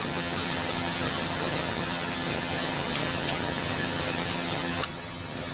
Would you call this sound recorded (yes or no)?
no